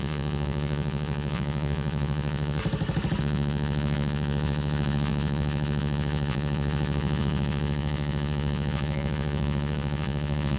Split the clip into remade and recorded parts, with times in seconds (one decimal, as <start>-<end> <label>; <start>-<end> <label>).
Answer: 0.0-2.6 remade; 2.6-3.2 recorded; 3.2-10.6 remade